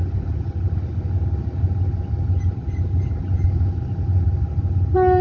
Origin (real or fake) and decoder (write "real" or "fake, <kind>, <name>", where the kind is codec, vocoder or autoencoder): real